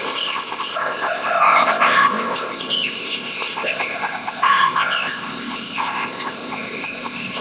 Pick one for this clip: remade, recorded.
remade